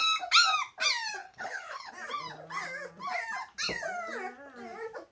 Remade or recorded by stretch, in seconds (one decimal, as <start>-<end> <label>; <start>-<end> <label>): 0.0-1.2 recorded; 1.2-1.9 remade; 1.9-5.1 recorded